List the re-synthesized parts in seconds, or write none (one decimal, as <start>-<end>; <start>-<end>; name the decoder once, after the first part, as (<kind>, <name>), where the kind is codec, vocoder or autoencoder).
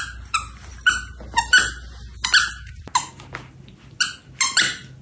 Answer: none